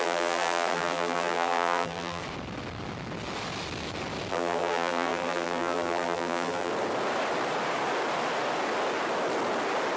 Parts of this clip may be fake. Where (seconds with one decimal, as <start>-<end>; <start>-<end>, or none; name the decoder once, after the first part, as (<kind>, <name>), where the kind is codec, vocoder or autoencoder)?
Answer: 0.0-2.2 (vocoder, BigVGAN v2); 4.3-6.7